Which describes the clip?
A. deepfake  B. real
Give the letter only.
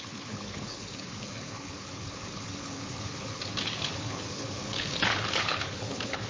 A